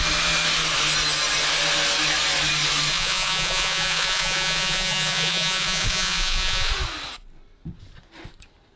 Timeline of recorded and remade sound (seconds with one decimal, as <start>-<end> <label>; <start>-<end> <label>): 0.0-2.9 recorded; 2.9-6.7 remade; 6.7-8.8 recorded